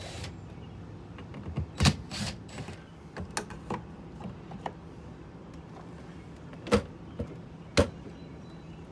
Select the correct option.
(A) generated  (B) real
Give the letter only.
B